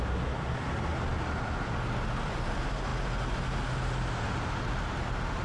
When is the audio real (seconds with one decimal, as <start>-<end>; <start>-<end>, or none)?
0.0-5.4